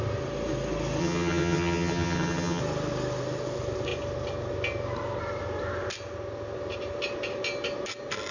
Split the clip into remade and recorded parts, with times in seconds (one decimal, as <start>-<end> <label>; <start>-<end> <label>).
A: 0.0-1.0 recorded; 1.0-2.6 remade; 2.6-8.3 recorded